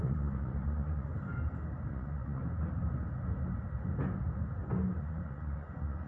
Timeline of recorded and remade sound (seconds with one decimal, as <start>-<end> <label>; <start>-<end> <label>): 0.0-1.1 remade; 1.1-1.9 recorded; 1.9-2.4 remade; 2.4-5.0 recorded; 5.0-6.1 remade